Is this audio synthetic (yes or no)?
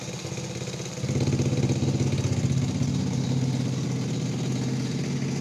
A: no